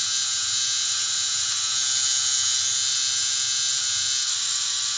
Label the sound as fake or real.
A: real